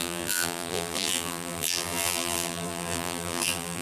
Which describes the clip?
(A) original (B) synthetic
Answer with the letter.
B